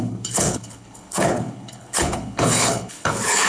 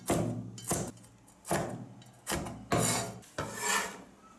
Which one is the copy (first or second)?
first